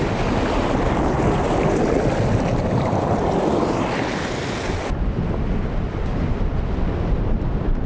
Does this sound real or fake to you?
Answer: real